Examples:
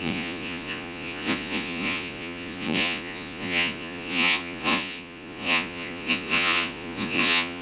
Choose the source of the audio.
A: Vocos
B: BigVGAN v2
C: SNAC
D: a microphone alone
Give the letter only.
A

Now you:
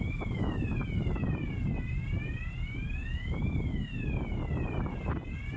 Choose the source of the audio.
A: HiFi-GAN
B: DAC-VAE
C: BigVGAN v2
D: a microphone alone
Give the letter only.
D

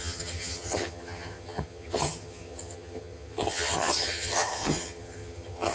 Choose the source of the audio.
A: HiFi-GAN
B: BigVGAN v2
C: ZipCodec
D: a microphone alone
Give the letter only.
A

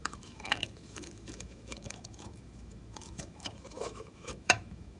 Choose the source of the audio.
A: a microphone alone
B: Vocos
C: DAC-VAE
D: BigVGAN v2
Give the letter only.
C